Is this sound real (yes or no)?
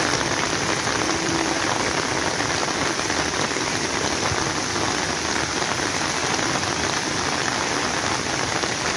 yes